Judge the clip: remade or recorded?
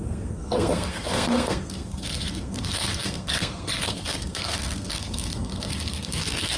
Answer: remade